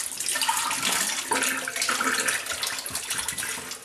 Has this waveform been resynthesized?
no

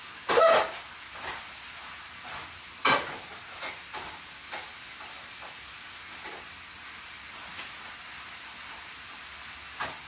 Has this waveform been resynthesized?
no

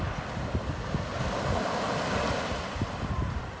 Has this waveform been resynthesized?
yes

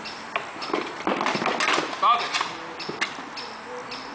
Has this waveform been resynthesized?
no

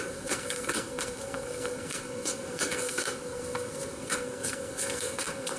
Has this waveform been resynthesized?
yes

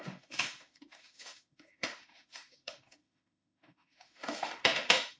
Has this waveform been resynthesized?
yes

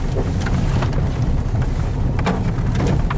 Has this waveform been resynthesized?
no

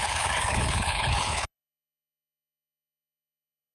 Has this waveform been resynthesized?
yes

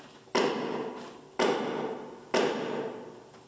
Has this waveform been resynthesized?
no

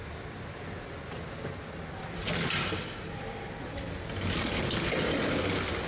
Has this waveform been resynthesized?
no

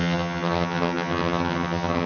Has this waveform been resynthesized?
yes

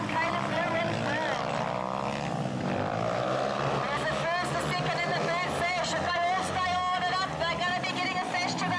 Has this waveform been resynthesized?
no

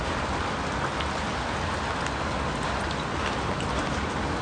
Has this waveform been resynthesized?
no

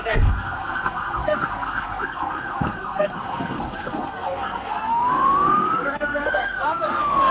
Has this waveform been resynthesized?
yes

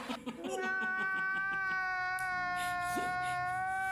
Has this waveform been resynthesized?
no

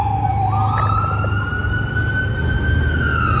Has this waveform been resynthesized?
no